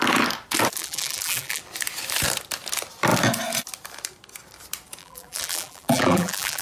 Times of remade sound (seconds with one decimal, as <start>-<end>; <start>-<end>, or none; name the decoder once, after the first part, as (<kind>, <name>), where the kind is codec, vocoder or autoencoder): 0.8-1.6 (vocoder, BigVGAN v2); 5.0-6.6